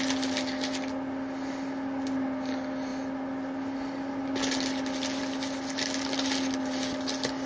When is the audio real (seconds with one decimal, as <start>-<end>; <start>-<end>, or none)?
0.0-7.5